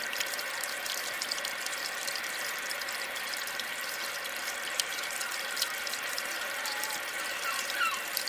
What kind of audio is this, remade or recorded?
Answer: remade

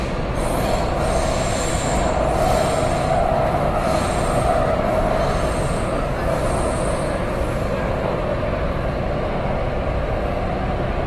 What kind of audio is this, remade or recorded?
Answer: recorded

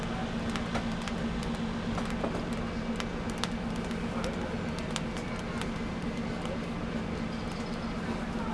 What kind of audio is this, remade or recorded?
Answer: recorded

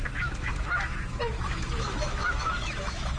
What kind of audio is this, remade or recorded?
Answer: remade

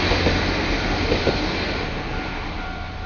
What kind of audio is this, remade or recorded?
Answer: recorded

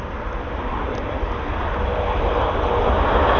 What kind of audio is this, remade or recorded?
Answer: recorded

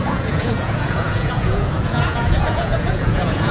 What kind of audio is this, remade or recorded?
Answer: remade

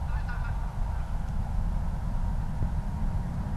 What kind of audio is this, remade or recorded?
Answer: recorded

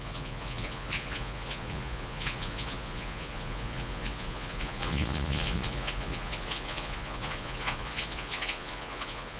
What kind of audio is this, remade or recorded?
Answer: remade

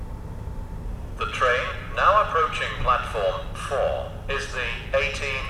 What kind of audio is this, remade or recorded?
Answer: recorded